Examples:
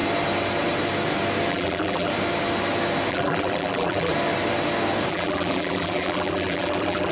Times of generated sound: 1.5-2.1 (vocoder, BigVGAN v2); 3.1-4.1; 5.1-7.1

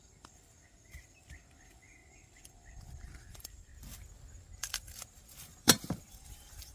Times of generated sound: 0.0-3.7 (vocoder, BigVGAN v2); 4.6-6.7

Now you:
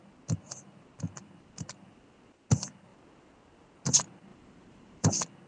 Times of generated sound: 4.3-5.1 (vocoder, BigVGAN v2)

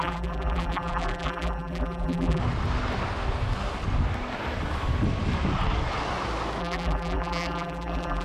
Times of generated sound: 0.0-2.4 (vocoder, BigVGAN v2); 6.6-8.2

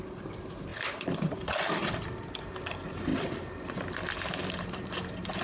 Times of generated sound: 0.0-5.4 (vocoder, BigVGAN v2)

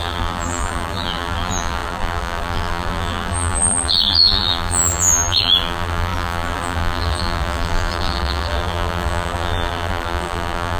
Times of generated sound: 0.0-10.8 (vocoder, BigVGAN v2)

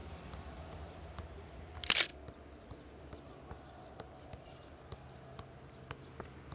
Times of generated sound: 0.0-1.6 (vocoder, BigVGAN v2)

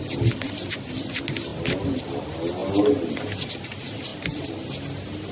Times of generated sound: none